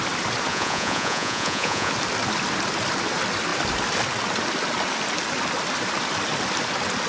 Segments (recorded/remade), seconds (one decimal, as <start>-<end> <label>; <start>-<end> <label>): 0.0-0.5 recorded; 0.5-1.9 remade; 1.9-7.1 recorded